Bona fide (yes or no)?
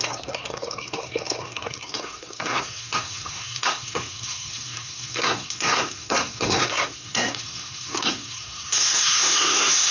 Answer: no